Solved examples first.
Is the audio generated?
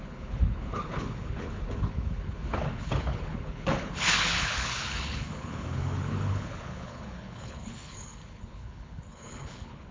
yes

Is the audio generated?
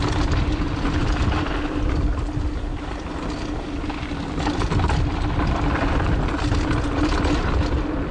no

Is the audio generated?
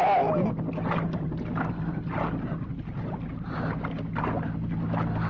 no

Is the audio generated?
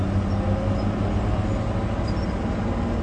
no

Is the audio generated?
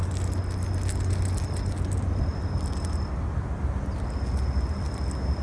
no